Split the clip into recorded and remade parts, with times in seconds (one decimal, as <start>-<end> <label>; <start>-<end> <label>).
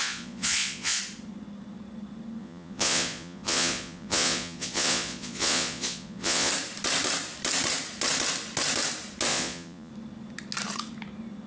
0.0-1.0 remade; 1.0-2.4 recorded; 2.4-6.5 remade; 6.5-9.3 recorded; 9.3-9.9 remade; 9.9-11.5 recorded